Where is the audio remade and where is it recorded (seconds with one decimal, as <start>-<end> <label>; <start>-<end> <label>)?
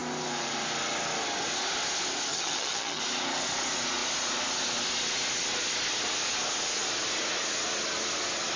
0.0-2.3 recorded; 2.3-3.0 remade; 3.0-8.6 recorded